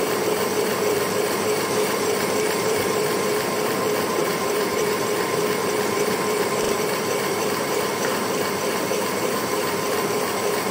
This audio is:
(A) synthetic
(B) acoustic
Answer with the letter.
A